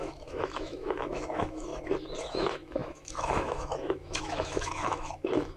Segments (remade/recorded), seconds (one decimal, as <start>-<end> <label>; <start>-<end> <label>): 0.0-1.7 remade; 1.7-2.2 recorded; 2.2-5.6 remade